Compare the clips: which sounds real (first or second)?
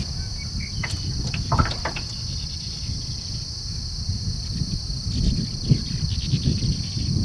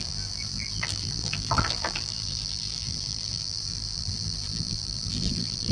first